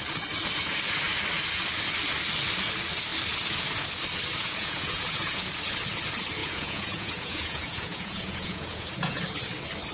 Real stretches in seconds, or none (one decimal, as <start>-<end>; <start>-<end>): 0.0-4.4; 5.5-6.4; 9.2-9.9